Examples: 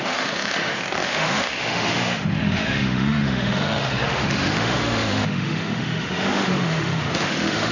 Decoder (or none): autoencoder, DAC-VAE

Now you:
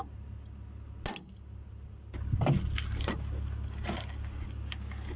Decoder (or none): none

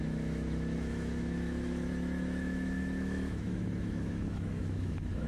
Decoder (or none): autoencoder, DAC-VAE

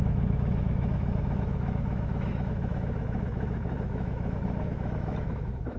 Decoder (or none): autoencoder, DAC-VAE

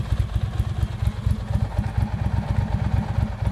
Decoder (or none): none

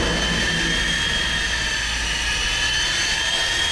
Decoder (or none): none